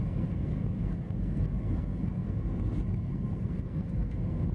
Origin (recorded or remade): remade